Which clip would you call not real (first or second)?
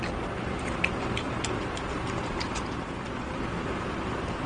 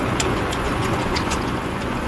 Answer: second